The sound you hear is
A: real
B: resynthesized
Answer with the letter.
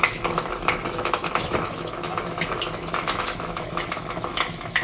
B